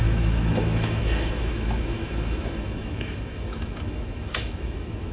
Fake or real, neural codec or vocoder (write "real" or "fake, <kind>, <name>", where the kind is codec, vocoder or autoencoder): fake, autoencoder, DAC-VAE